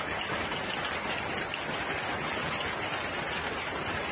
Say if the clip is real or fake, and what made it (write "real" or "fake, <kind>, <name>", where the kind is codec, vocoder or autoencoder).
real